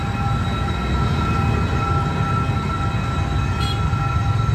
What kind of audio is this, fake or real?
real